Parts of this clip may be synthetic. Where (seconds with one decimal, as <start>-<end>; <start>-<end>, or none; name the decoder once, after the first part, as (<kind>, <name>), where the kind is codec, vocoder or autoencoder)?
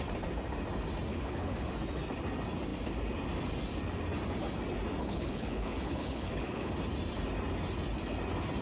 1.1-1.7 (codec, HILCodec); 5.0-6.7